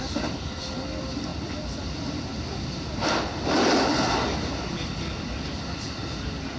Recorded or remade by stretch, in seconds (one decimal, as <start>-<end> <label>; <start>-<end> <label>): 0.0-6.6 recorded